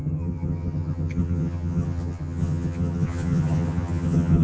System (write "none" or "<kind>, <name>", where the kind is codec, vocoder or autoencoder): vocoder, HiFi-GAN